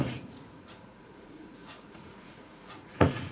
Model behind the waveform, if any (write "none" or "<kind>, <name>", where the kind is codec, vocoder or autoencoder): vocoder, Vocos